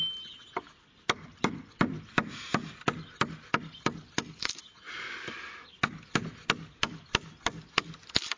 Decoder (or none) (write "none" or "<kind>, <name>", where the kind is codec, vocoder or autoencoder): none